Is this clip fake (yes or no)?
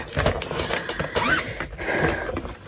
no